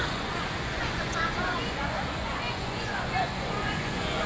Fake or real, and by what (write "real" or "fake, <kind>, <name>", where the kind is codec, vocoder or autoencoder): fake, vocoder, Vocos